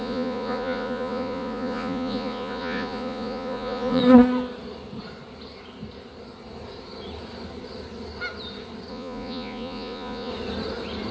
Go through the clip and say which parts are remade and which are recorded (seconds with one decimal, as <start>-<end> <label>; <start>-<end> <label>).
0.0-4.0 remade; 4.0-8.9 recorded; 8.9-10.3 remade; 10.3-11.1 recorded